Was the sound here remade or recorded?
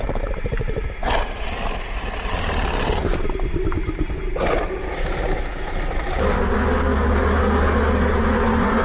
recorded